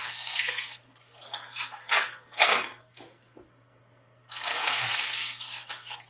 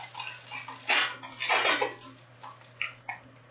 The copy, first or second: first